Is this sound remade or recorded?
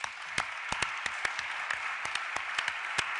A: recorded